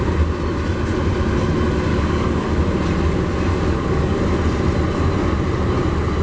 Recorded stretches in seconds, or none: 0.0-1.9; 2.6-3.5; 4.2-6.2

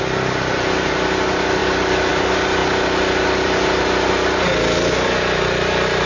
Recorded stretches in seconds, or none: 0.0-6.1

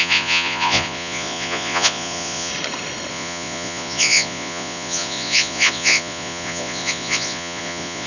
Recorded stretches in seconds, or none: 2.5-3.1

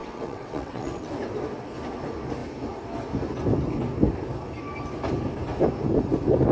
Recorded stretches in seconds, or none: 1.1-6.5